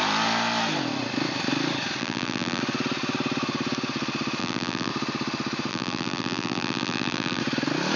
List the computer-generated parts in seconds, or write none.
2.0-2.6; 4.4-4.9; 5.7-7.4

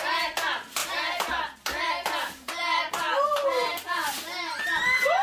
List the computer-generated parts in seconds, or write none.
0.8-1.9

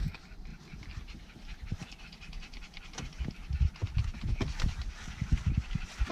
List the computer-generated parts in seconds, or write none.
none

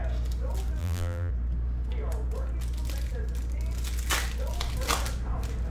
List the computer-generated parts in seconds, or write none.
0.8-1.3

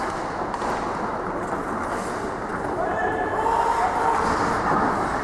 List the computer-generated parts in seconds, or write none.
1.1-1.8; 2.5-3.3

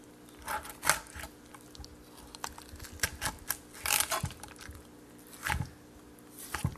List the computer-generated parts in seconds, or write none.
none